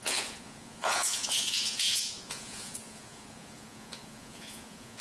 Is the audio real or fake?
fake